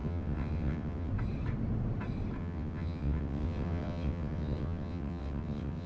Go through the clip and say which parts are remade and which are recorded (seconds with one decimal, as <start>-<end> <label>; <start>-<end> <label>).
0.0-1.1 remade; 1.1-2.4 recorded; 2.4-5.9 remade